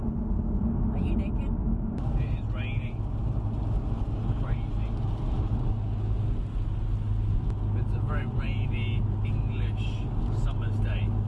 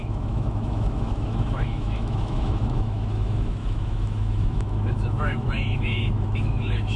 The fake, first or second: second